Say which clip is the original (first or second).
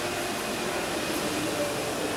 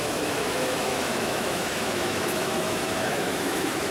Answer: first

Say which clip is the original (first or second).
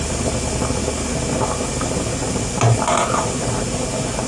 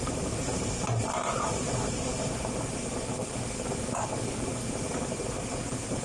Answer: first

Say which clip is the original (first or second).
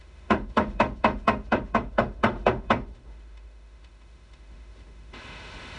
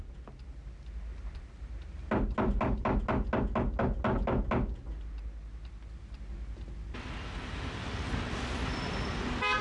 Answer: second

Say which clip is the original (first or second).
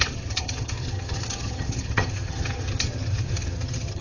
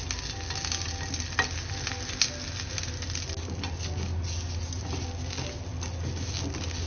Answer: second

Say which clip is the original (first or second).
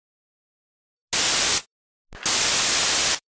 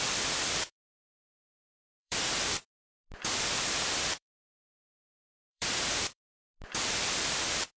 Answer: first